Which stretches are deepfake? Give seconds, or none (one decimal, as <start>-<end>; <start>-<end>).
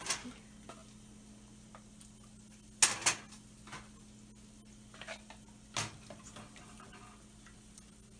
none